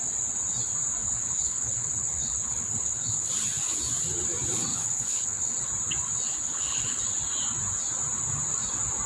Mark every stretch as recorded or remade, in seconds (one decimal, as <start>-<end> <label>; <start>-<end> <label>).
0.0-1.0 recorded; 1.0-3.3 remade; 3.3-4.7 recorded; 4.7-5.7 remade; 5.7-6.3 recorded; 6.3-7.0 remade; 7.0-9.1 recorded